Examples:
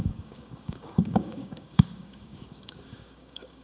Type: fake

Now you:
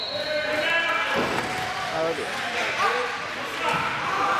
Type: real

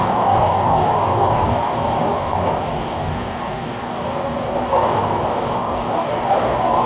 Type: fake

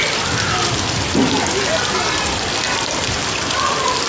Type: real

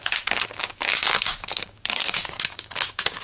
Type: fake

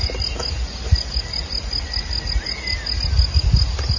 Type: real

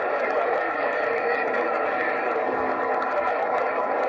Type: fake